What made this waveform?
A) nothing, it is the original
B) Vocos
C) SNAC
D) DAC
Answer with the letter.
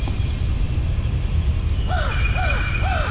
A